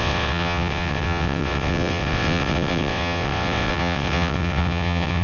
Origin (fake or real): fake